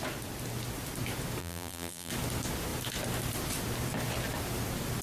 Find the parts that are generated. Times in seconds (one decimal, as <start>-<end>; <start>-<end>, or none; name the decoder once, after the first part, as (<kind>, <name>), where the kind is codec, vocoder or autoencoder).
1.4-2.1 (vocoder, BigVGAN v2)